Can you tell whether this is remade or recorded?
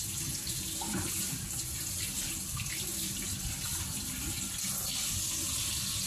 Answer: recorded